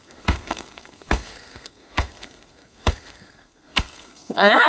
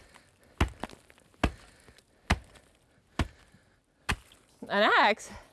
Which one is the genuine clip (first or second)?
second